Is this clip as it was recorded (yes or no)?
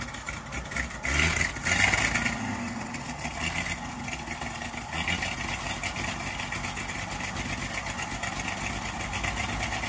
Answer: yes